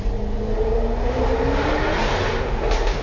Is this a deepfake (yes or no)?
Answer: no